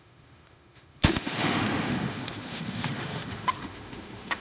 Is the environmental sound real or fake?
fake